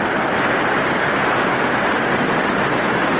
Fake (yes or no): no